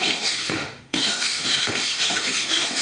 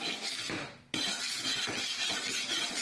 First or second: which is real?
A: second